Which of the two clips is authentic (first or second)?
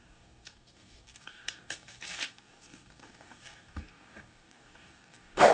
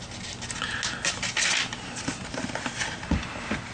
second